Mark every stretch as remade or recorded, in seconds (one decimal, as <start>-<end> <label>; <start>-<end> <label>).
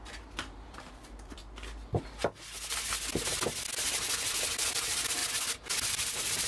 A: 0.0-1.4 remade; 1.4-4.7 recorded; 4.7-5.2 remade; 5.2-5.9 recorded; 5.9-6.5 remade